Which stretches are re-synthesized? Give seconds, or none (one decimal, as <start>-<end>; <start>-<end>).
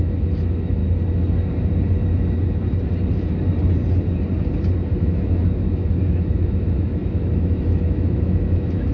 0.0-0.8; 5.0-8.9